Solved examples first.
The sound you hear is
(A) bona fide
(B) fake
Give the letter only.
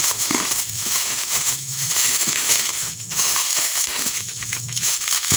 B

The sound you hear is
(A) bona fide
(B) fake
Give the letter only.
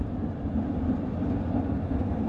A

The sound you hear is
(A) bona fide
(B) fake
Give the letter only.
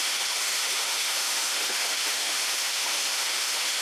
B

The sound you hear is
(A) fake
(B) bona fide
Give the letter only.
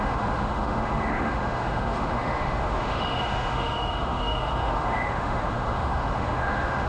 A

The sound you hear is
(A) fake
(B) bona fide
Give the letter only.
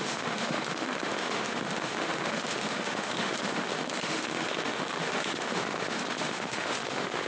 A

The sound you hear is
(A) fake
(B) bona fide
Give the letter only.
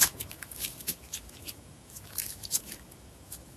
A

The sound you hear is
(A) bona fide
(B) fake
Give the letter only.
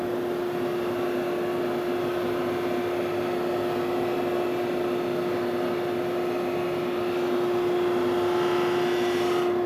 A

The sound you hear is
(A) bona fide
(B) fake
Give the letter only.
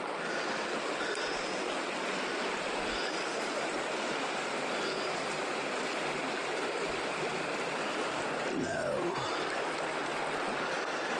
A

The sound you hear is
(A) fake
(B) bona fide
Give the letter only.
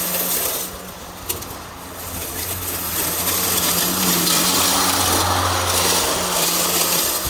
B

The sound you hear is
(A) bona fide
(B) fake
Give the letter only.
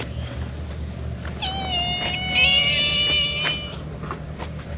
A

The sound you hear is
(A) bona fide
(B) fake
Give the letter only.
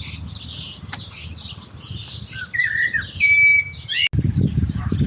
A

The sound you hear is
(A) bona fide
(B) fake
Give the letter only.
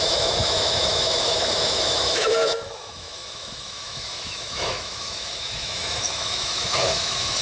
B